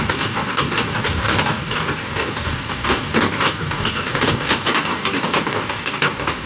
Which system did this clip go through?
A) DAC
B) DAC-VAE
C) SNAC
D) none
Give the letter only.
A